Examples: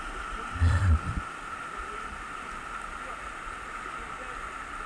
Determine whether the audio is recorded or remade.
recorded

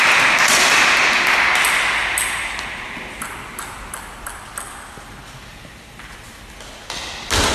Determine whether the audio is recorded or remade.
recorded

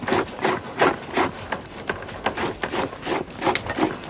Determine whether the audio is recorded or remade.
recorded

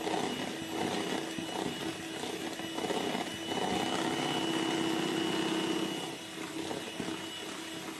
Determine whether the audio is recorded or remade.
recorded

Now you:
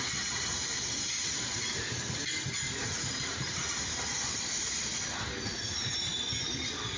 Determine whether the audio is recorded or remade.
recorded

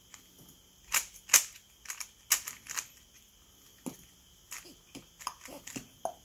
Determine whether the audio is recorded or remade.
recorded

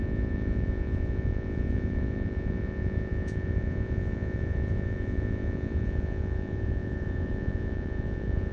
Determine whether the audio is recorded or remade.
remade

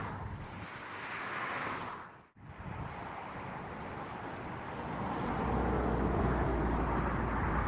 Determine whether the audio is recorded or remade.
recorded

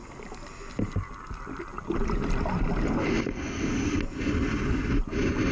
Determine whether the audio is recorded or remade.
recorded